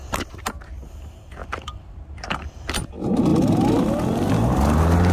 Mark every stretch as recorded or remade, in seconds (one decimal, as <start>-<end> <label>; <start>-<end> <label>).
0.0-1.4 recorded; 1.4-2.7 remade; 2.7-5.1 recorded